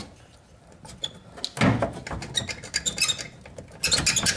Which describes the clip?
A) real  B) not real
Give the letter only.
A